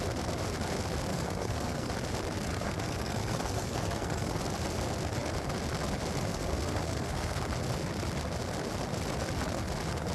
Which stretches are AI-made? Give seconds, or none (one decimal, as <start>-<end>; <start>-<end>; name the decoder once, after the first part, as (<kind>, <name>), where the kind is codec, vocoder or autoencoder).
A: 1.1-1.9 (codec, SNAC); 2.5-4.4; 6.3-7.4